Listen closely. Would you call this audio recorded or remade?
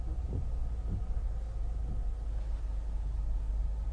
recorded